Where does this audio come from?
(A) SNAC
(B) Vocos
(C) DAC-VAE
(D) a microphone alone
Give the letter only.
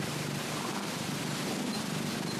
D